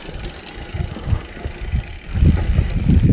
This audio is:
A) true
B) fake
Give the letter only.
A